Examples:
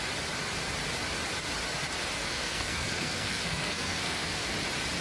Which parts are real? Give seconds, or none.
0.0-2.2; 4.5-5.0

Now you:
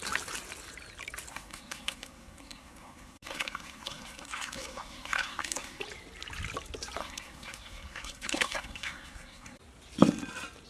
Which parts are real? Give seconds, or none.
0.0-1.3; 5.8-7.0; 9.6-10.7

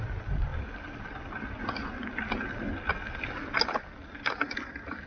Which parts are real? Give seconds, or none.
0.0-5.1